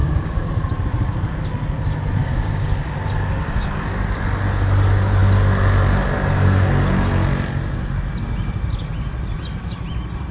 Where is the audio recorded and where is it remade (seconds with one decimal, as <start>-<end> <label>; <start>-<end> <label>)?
0.0-0.5 remade; 0.5-2.2 recorded; 2.2-2.7 remade; 2.7-10.3 recorded

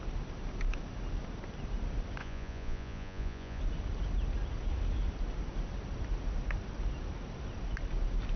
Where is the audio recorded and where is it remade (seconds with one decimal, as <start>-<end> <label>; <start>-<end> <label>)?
0.0-2.2 recorded; 2.2-3.6 remade; 3.6-8.4 recorded

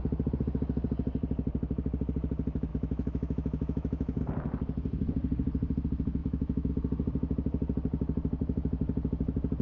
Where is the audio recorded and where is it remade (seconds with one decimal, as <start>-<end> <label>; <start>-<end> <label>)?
0.0-2.7 recorded; 2.7-4.2 remade; 4.2-6.2 recorded; 6.2-6.7 remade; 6.7-9.6 recorded

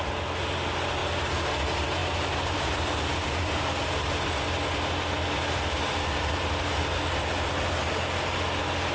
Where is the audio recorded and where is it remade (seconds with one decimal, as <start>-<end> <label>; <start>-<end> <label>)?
0.0-2.0 recorded; 2.0-4.0 remade; 4.0-8.9 recorded

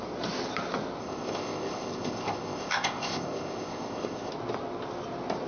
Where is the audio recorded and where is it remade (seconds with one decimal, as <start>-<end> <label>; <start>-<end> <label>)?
0.0-1.0 recorded; 1.0-4.3 remade; 4.3-5.5 recorded

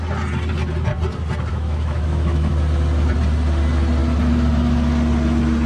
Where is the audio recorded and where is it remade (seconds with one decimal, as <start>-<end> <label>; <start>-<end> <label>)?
0.0-1.5 recorded; 1.5-2.5 remade; 2.5-5.7 recorded